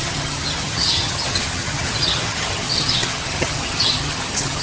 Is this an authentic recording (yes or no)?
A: no